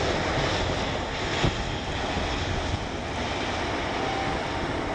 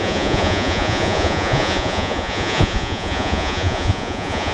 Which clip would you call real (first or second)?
first